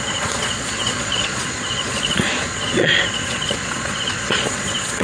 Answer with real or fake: fake